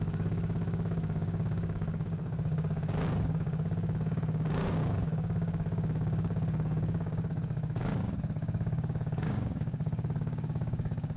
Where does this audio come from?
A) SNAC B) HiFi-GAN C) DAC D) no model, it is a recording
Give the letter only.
C